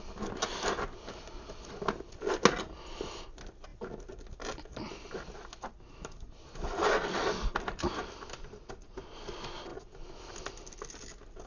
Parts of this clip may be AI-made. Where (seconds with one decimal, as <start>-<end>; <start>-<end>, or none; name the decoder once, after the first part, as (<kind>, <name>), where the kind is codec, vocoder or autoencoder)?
none